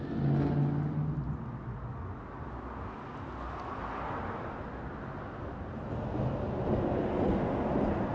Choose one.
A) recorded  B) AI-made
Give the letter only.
A